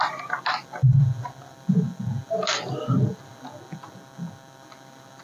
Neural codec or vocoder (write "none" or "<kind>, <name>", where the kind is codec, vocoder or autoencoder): none